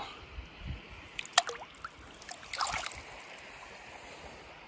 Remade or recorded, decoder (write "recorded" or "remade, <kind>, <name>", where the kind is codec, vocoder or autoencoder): recorded